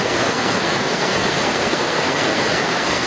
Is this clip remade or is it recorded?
remade